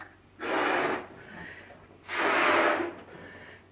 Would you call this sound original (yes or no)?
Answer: yes